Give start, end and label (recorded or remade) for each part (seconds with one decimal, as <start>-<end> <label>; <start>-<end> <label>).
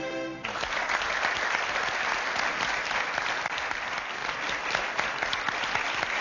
0.0-6.2 recorded